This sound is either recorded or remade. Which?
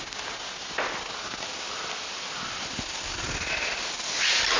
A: recorded